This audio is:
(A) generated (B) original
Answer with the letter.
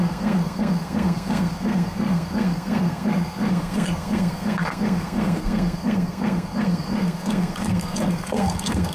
A